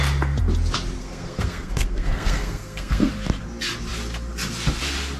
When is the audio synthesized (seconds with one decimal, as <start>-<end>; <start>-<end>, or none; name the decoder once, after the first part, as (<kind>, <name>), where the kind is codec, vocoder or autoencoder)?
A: 1.0-3.1 (codec, SNAC)